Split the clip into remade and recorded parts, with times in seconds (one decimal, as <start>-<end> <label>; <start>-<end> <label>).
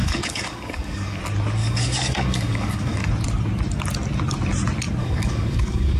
0.0-1.2 remade; 1.2-1.6 recorded; 1.6-3.1 remade; 3.1-5.0 recorded; 5.0-6.0 remade